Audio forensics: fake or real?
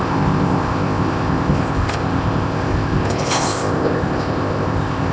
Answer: fake